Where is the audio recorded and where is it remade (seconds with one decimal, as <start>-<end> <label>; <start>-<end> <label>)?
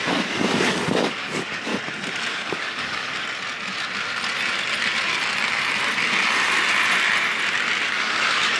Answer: 0.0-1.7 remade; 1.7-2.3 recorded; 2.3-3.1 remade; 3.1-7.9 recorded; 7.9-8.6 remade